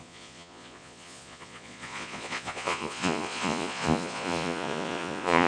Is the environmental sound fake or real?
fake